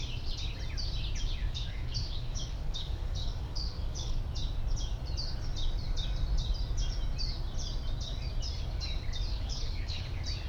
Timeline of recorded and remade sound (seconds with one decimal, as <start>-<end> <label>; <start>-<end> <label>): 0.0-1.4 recorded; 1.4-4.2 remade; 4.2-9.3 recorded; 9.3-10.0 remade; 10.0-10.5 recorded